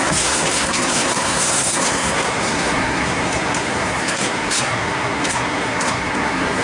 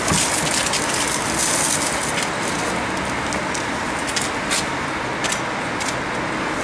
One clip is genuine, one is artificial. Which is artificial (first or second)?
first